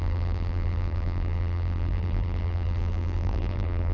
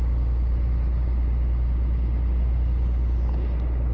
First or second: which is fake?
first